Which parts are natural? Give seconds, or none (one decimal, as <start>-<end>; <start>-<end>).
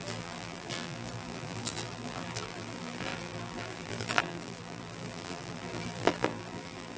none